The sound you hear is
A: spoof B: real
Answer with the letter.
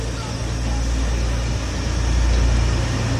B